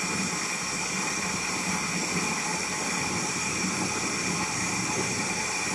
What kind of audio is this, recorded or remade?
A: remade